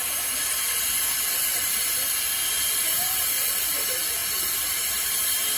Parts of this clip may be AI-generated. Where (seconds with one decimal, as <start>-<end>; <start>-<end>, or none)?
0.0-1.7; 2.5-5.6